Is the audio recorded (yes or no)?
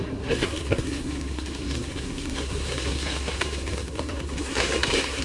no